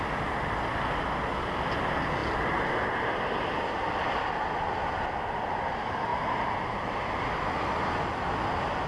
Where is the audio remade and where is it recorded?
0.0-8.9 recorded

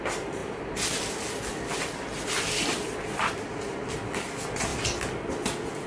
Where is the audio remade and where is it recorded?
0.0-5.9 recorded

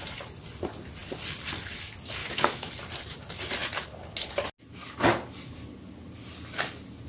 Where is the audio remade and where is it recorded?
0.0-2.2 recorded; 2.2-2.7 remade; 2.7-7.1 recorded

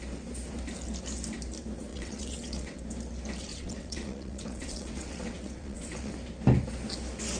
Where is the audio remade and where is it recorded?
0.0-1.9 recorded; 1.9-2.8 remade; 2.8-3.5 recorded; 3.5-6.1 remade; 6.1-7.4 recorded